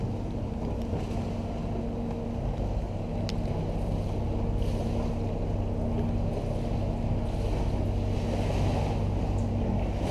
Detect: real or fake real